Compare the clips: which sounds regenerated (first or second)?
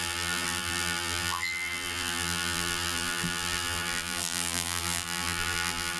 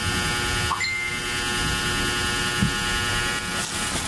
first